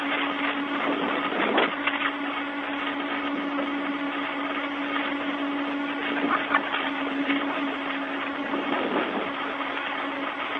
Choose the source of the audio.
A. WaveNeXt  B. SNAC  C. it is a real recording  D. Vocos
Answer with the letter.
C